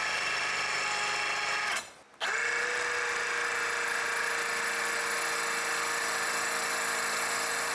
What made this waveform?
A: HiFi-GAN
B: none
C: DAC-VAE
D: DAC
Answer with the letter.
B